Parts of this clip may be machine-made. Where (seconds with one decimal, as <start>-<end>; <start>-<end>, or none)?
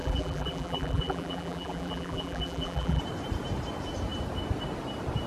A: 0.0-3.0